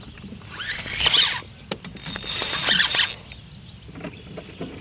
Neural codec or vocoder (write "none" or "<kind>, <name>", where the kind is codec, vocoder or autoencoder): none